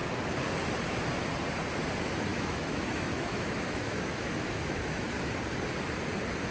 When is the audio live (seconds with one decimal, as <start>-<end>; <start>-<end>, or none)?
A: 0.0-2.3; 5.1-6.5